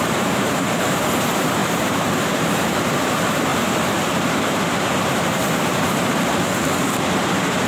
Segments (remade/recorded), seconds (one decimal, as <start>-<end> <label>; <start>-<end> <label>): 0.0-7.7 remade